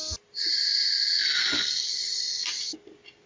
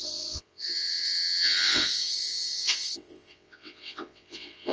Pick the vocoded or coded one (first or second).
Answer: second